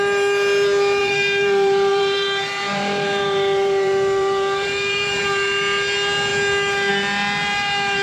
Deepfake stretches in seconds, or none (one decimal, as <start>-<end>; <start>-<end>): 1.0-5.2